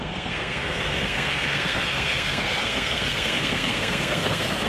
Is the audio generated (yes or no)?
yes